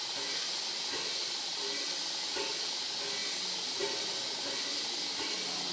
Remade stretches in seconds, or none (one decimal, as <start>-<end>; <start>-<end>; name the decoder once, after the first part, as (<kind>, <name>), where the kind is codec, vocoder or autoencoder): none